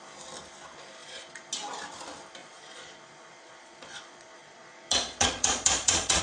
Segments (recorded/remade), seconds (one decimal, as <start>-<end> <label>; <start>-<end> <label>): 0.0-1.0 recorded; 1.0-1.5 remade; 1.5-2.4 recorded; 2.4-6.2 remade